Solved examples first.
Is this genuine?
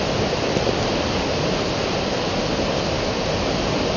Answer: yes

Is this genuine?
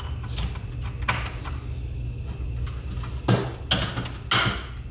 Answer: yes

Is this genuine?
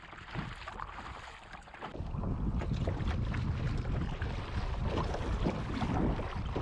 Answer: yes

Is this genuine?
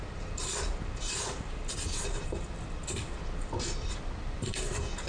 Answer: yes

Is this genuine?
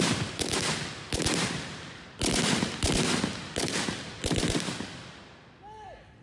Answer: yes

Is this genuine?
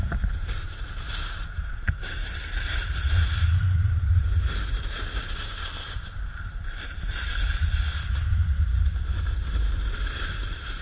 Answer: no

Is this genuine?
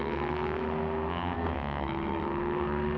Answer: no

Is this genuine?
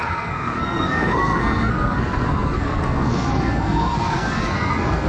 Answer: no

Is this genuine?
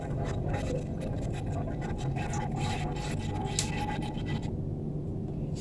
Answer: yes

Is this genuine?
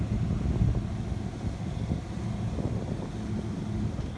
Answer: yes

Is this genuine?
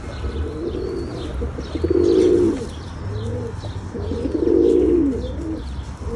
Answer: yes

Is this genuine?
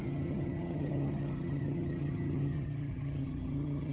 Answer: no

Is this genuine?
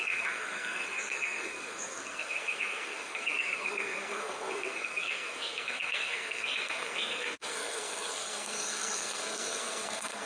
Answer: no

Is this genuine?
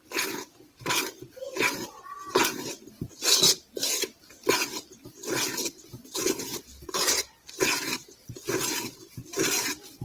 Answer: yes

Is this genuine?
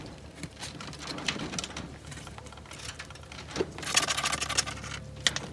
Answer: yes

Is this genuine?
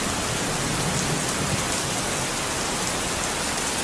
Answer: yes